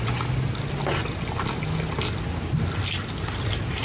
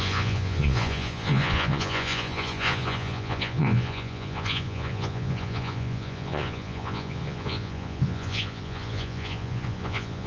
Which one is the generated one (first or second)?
second